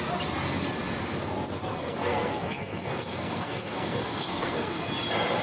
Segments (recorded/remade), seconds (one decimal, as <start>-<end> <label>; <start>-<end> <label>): 0.0-1.7 recorded; 1.7-4.9 remade; 4.9-5.4 recorded